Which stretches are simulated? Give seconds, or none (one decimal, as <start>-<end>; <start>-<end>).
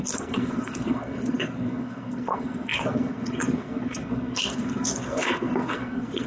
0.0-6.3